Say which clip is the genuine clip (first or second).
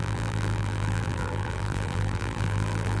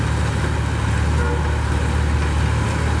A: second